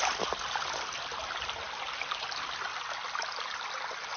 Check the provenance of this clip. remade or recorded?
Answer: recorded